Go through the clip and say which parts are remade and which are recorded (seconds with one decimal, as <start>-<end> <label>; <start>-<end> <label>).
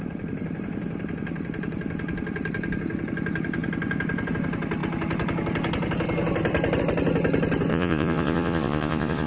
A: 0.0-7.7 recorded; 7.7-9.3 remade